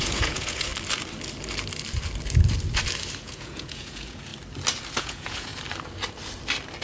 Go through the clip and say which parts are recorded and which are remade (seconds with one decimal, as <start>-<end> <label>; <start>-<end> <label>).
0.0-0.7 remade; 0.7-3.2 recorded; 3.2-4.3 remade; 4.3-5.0 recorded; 5.0-5.5 remade; 5.5-6.8 recorded